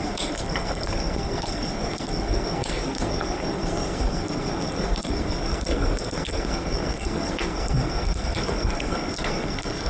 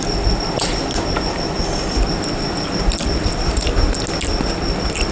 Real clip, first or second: second